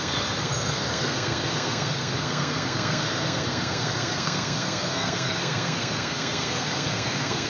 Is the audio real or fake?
fake